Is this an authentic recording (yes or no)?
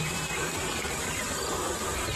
no